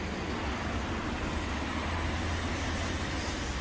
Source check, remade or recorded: recorded